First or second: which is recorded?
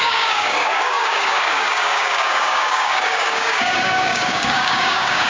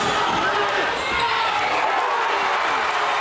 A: second